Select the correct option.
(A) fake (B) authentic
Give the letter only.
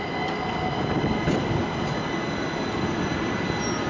B